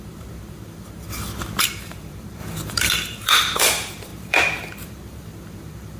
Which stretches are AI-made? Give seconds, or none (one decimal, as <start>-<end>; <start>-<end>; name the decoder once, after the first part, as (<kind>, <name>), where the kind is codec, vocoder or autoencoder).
0.0-1.1 (vocoder, BigVGAN v2); 1.6-6.0